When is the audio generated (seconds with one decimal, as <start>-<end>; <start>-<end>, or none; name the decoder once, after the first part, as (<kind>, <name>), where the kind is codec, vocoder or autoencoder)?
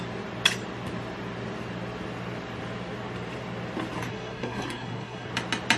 4.1-5.3 (codec, SNAC)